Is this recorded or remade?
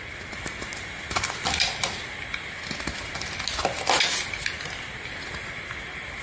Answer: recorded